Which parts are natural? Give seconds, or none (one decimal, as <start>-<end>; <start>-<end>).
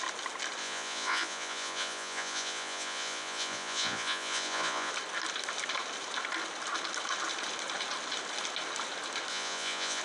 0.0-0.6; 4.9-9.3